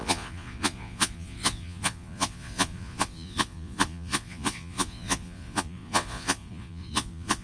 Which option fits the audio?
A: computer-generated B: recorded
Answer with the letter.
A